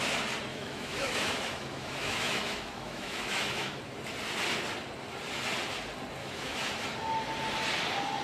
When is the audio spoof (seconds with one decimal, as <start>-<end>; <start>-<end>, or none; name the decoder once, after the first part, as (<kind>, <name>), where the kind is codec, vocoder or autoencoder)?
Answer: 0.5-3.8 (autoencoder, DAC-VAE); 6.2-6.7